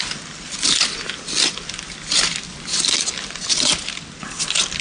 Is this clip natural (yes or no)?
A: yes